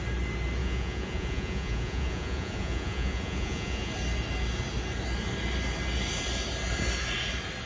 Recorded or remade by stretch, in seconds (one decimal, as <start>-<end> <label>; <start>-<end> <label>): 0.0-0.6 recorded; 0.6-3.9 remade; 3.9-7.7 recorded